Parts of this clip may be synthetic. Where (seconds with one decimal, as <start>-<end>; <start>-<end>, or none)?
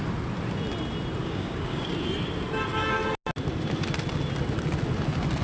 1.2-1.9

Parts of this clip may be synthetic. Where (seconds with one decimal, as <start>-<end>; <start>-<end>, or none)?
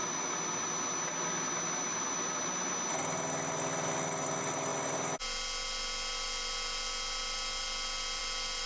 none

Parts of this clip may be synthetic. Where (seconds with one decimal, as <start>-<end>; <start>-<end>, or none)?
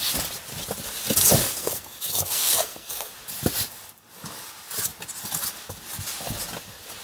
1.4-3.1